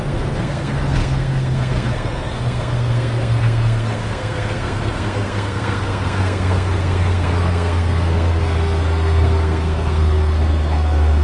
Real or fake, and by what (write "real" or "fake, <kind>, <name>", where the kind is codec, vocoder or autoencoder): fake, codec, SNAC